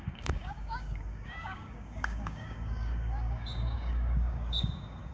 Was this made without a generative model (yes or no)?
no